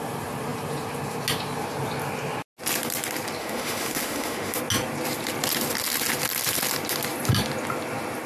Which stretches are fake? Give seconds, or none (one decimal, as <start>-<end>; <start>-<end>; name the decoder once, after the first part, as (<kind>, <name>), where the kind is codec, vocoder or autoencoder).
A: 3.4-4.6 (autoencoder, DAC-VAE)